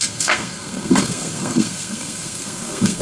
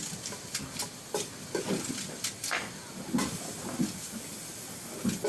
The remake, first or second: first